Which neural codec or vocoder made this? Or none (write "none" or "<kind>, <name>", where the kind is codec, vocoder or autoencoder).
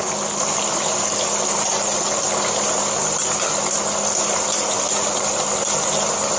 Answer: none